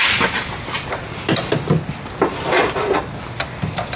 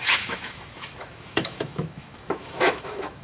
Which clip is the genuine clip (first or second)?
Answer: first